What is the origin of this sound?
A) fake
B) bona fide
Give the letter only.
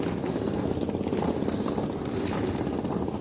B